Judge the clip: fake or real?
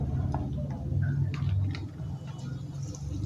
real